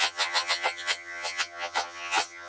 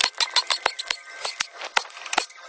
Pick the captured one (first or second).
second